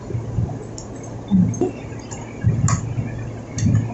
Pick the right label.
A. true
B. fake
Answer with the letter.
A